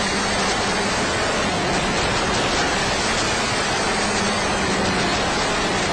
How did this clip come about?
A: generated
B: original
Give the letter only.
B